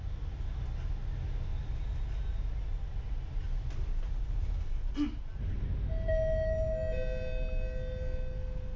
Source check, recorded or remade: recorded